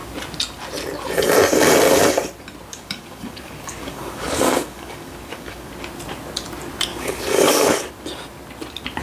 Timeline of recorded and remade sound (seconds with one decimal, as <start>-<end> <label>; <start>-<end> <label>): 0.0-2.7 recorded; 2.7-5.7 remade; 5.7-6.9 recorded; 6.9-7.9 remade; 7.9-9.0 recorded